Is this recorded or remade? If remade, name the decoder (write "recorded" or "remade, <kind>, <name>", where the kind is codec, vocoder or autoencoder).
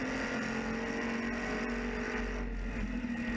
recorded